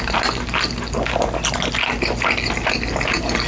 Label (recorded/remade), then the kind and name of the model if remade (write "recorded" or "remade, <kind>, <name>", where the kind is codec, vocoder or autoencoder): recorded